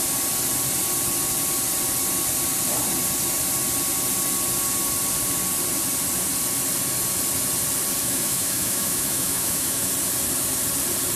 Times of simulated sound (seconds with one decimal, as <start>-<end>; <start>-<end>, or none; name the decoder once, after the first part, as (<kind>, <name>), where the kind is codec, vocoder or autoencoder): 8.0-9.9 (autoencoder, DAC-VAE)